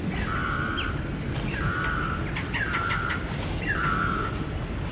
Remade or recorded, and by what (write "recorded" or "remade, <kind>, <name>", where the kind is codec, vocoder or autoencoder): remade, vocoder, BigVGAN v2